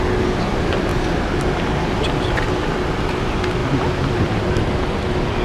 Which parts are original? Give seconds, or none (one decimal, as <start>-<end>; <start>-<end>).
0.0-3.6; 4.6-5.4